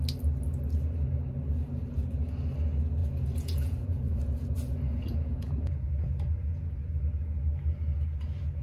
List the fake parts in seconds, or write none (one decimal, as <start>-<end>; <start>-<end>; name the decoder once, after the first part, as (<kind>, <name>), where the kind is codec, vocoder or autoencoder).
3.0-7.0 (vocoder, Vocos)